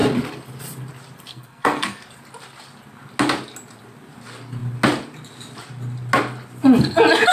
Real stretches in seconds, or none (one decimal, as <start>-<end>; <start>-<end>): 0.0-1.3; 2.0-7.3